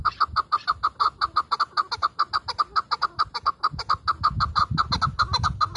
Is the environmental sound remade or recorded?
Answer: recorded